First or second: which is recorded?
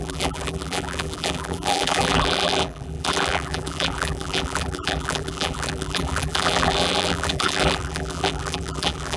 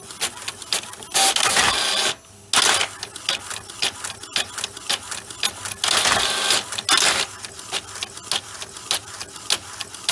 second